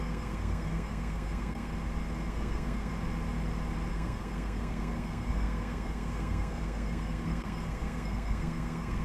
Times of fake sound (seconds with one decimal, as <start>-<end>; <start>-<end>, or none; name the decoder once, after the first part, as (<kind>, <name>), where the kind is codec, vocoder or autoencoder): 0.0-1.7 (codec, SNAC); 2.3-2.9; 3.9-9.0